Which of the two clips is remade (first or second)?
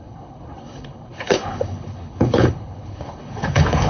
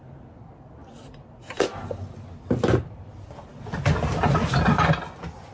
first